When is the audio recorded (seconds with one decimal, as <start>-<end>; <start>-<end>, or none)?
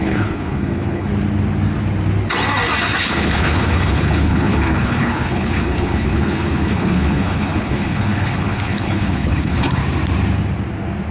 1.1-3.0; 9.8-11.1